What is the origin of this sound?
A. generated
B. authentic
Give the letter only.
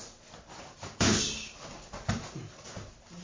B